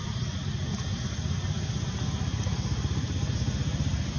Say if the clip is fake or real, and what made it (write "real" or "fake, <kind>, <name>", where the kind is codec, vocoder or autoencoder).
real